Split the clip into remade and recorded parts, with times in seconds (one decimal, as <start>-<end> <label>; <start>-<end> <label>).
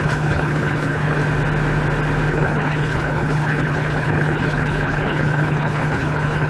0.0-1.2 remade; 1.2-2.3 recorded; 2.3-6.5 remade